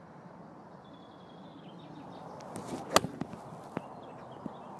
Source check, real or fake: real